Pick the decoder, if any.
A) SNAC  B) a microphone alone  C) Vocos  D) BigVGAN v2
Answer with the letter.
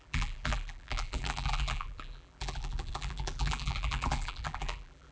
D